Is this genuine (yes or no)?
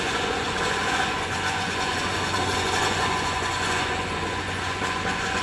no